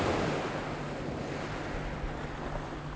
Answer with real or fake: real